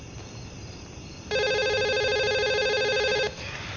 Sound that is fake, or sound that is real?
real